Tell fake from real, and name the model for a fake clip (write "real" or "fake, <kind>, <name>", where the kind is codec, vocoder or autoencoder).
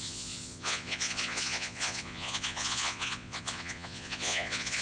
fake, vocoder, Vocos